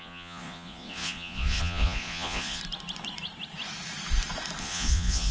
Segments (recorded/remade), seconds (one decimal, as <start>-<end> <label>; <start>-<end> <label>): 0.0-2.6 remade; 2.6-4.6 recorded; 4.6-5.3 remade